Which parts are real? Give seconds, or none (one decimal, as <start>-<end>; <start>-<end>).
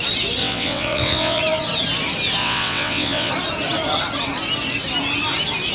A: 0.0-0.4; 1.4-2.4; 3.3-5.7